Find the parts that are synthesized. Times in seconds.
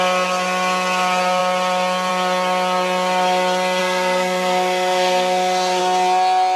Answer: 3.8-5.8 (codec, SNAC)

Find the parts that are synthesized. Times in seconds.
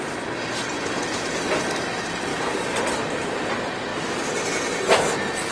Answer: 2.3-3.5 (vocoder, BigVGAN v2); 3.9-4.6